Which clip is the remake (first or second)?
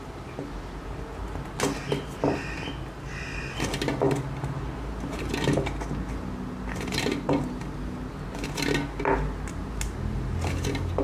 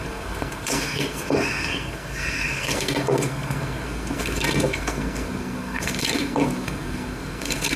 second